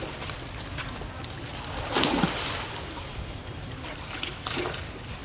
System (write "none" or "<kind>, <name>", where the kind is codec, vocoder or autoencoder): none